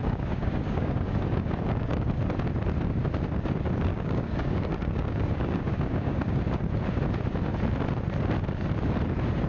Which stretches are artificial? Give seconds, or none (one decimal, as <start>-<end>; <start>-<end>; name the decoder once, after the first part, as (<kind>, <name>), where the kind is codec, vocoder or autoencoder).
0.0-2.2 (codec, DAC); 3.9-6.4